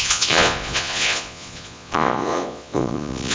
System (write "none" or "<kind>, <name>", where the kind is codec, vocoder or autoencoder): vocoder, Vocos